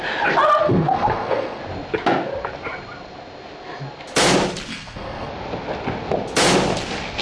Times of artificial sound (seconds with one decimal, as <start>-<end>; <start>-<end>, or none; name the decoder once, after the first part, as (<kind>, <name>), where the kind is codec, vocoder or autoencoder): 0.6-1.6 (codec, SNAC); 4.7-5.3